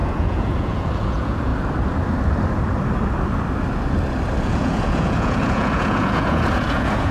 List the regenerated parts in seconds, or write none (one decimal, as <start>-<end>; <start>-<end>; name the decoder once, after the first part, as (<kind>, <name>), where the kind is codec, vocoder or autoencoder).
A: 0.0-1.5 (vocoder, Vocos); 4.4-7.1

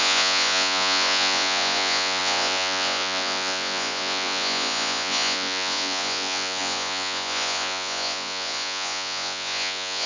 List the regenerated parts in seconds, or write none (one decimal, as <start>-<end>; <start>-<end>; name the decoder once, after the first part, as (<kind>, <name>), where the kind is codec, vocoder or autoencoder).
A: 0.0-10.1 (vocoder, Vocos)